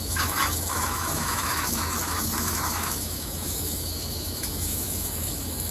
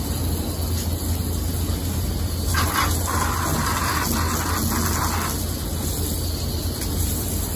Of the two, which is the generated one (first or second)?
first